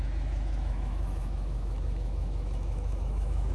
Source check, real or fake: fake